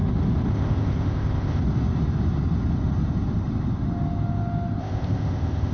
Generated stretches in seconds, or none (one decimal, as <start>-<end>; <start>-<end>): 0.5-1.6; 4.8-5.7